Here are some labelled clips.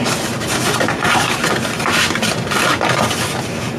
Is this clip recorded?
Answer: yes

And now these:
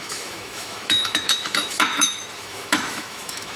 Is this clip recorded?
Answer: no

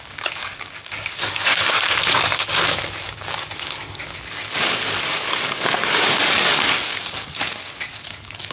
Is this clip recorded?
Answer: no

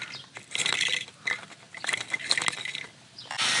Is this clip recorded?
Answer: yes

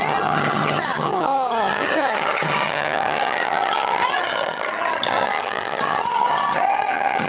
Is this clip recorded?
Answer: no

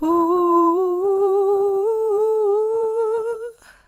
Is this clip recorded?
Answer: no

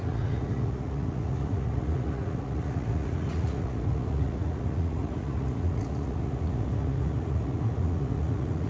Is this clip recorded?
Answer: no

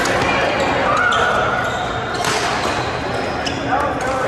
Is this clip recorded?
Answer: yes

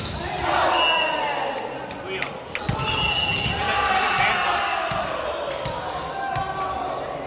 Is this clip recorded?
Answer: yes